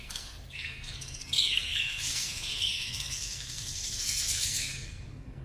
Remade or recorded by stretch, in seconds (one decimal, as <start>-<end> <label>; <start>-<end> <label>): 0.0-5.4 remade